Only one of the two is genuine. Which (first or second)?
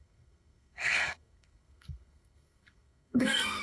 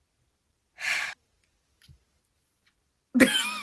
second